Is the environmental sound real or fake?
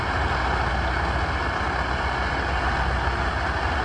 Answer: real